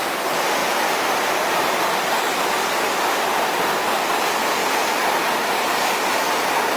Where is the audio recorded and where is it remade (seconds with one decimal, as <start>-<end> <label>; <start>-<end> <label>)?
0.0-6.8 recorded